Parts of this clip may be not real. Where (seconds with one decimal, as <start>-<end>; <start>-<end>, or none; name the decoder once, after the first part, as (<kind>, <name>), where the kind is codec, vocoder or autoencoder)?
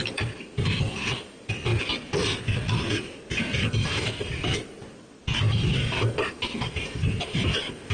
0.0-1.7 (vocoder, BigVGAN v2); 3.7-4.3; 5.5-7.9